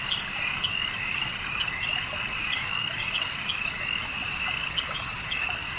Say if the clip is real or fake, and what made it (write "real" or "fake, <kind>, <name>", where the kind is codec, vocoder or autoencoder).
real